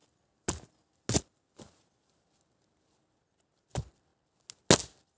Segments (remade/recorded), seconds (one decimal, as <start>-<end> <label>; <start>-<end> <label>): 0.0-5.2 recorded